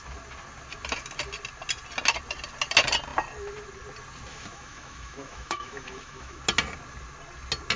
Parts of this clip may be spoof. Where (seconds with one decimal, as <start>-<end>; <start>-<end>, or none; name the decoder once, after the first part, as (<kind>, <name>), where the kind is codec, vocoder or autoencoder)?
4.3-6.4 (autoencoder, DAC-VAE)